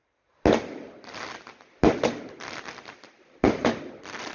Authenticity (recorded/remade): recorded